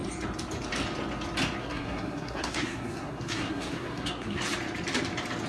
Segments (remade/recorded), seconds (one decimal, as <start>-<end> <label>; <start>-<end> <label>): 0.0-1.6 recorded; 1.6-4.4 remade; 4.4-5.5 recorded